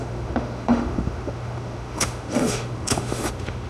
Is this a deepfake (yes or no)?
yes